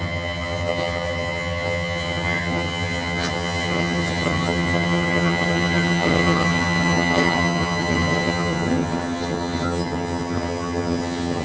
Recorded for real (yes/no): no